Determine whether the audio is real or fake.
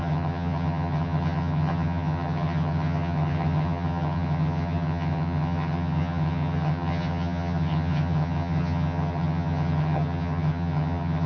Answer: fake